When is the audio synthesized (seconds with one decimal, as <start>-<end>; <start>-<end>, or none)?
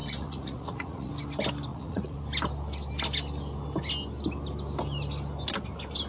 0.0-1.1; 1.7-2.2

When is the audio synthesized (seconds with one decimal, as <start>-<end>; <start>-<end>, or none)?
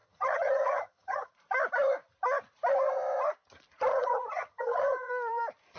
0.0-1.3; 3.9-5.1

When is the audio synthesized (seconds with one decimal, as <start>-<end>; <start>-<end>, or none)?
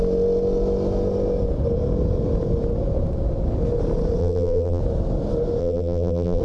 4.2-4.8; 5.6-6.4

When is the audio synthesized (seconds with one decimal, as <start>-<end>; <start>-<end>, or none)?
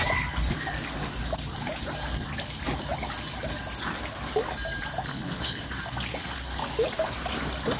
5.1-5.6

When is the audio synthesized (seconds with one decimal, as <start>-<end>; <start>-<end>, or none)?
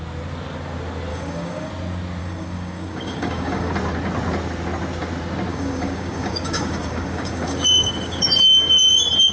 1.1-1.7; 2.2-3.7; 5.5-8.9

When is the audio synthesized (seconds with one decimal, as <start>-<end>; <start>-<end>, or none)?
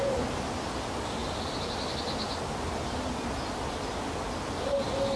none